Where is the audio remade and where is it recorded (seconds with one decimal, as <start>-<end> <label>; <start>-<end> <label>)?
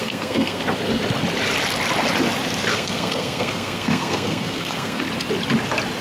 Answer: 0.0-0.6 remade; 0.6-2.7 recorded; 2.7-5.0 remade; 5.0-6.0 recorded